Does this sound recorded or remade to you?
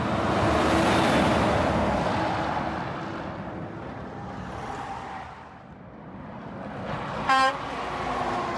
recorded